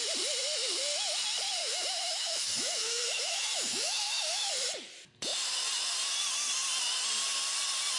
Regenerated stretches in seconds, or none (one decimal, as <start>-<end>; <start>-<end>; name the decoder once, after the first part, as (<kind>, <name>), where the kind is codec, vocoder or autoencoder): 1.6-4.5 (autoencoder, DAC-VAE)